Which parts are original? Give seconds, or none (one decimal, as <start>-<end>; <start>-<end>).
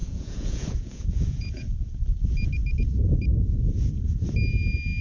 2.0-5.0